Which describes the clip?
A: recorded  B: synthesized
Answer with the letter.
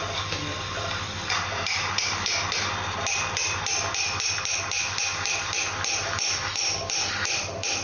A